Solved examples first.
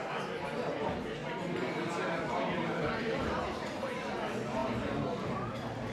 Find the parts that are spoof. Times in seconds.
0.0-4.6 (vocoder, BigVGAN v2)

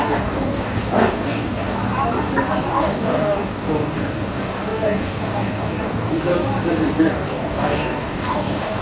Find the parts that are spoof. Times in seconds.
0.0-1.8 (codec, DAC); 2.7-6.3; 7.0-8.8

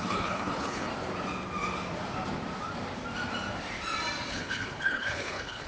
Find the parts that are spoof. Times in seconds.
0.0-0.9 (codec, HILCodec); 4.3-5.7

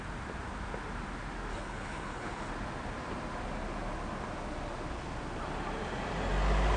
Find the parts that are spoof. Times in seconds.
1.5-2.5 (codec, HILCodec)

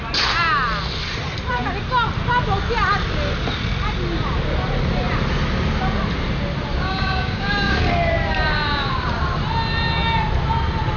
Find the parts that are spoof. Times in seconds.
6.7-7.8 (codec, DAC)